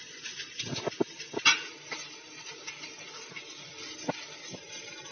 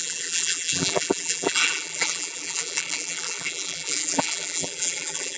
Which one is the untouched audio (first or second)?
first